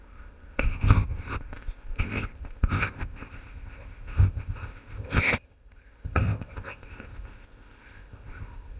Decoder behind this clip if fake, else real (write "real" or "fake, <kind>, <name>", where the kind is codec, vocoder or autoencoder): fake, codec, ZipCodec